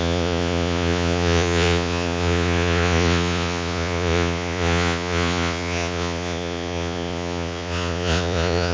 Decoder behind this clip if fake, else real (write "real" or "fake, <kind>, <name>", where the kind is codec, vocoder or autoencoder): fake, vocoder, Vocos